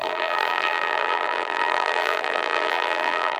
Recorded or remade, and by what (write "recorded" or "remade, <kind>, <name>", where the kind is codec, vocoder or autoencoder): remade, vocoder, BigVGAN v2